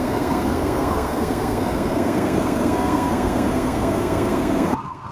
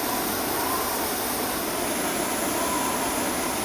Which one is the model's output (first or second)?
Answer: first